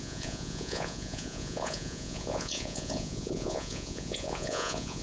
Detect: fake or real fake